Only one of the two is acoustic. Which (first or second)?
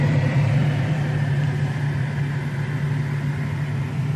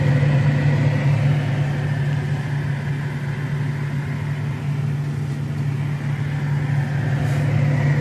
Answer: second